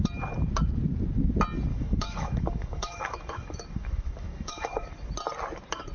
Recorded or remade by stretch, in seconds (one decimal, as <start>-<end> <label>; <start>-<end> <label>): 0.0-1.7 recorded; 1.7-5.1 remade; 5.1-5.9 recorded